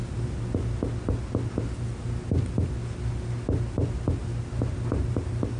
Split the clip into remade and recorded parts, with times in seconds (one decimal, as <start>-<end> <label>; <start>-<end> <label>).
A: 0.0-5.6 recorded